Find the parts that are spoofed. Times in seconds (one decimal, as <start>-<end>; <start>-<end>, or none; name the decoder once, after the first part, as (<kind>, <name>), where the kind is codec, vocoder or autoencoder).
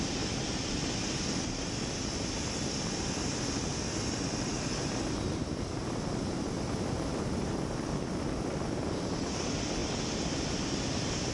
4.5-9.4 (vocoder, BigVGAN v2)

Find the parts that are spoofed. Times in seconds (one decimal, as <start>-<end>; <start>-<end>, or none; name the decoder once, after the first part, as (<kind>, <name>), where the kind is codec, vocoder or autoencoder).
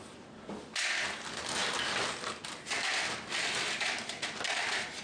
none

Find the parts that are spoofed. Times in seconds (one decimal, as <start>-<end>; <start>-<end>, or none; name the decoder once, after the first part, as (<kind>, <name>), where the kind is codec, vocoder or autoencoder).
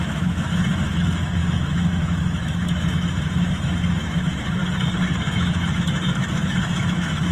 0.0-4.6 (autoencoder, DAC-VAE); 5.2-7.3